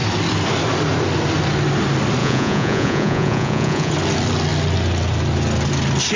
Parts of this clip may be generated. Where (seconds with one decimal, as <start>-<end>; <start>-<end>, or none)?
2.2-3.9